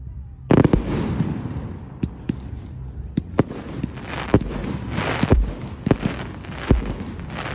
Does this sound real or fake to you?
real